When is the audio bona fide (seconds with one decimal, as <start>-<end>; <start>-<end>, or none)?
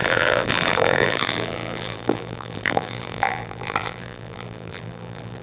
none